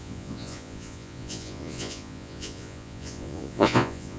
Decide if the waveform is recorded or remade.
remade